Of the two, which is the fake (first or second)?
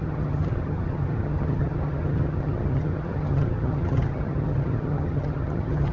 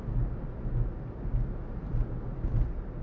first